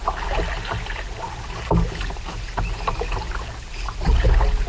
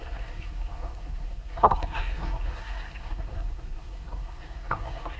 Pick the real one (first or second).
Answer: first